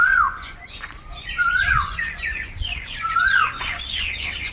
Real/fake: fake